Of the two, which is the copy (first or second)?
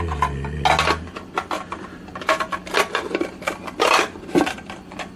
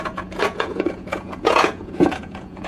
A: second